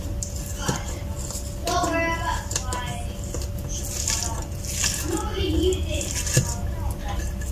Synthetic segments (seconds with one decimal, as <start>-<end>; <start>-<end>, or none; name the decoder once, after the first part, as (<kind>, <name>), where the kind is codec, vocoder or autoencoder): none